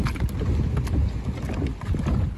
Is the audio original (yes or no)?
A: yes